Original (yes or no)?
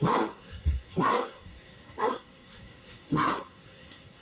no